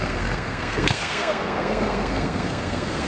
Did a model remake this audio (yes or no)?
yes